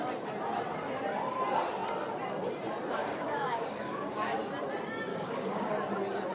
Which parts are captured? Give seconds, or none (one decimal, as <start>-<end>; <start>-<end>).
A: 0.0-2.9; 4.4-5.1; 5.7-6.3